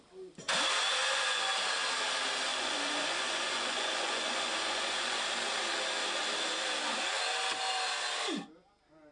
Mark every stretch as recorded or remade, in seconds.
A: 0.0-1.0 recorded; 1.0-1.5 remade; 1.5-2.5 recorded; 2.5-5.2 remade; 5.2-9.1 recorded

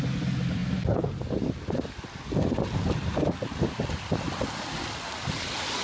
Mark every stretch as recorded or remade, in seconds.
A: 0.0-0.6 recorded; 0.6-2.2 remade; 2.2-5.8 recorded

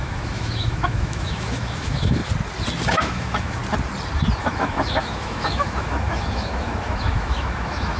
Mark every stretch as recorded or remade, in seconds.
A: 0.0-2.2 remade; 2.2-2.9 recorded; 2.9-3.6 remade; 3.6-4.4 recorded; 4.4-8.0 remade